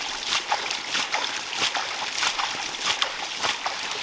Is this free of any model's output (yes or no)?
yes